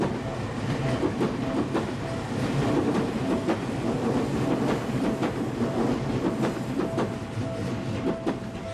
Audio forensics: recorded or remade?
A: recorded